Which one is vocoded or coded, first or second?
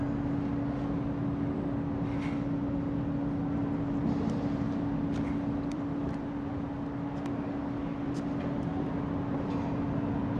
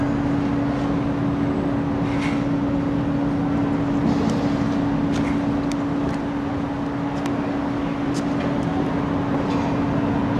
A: first